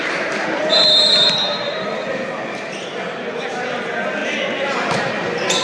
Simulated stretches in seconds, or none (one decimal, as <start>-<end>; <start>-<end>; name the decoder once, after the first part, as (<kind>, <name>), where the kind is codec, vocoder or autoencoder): none